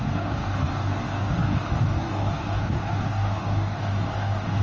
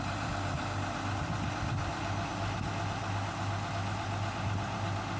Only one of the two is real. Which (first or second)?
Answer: second